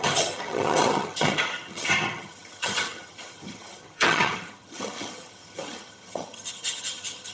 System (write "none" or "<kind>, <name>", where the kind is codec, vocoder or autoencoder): vocoder, HiFi-GAN